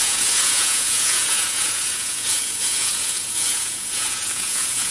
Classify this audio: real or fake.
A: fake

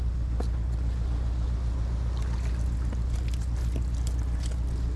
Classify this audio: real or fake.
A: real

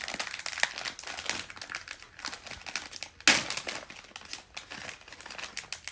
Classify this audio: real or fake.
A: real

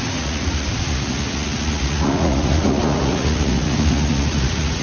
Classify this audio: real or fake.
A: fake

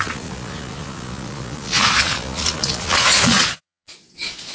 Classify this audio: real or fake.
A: fake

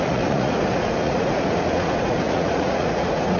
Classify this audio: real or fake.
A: fake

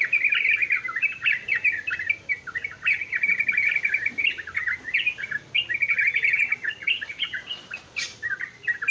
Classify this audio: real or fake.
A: real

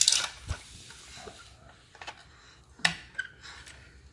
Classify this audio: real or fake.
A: real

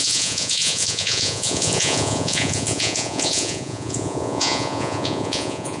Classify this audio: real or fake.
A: fake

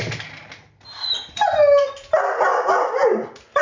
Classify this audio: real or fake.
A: real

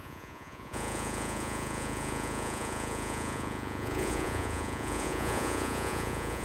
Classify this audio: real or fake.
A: fake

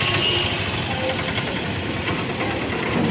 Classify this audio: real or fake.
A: real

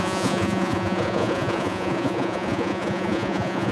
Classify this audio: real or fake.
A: fake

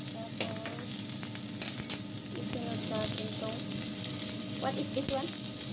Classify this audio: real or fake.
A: real